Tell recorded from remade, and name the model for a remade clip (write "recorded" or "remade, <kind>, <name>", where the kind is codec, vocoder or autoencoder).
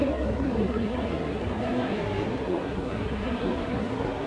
remade, codec, SNAC